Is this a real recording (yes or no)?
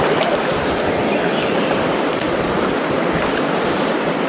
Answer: yes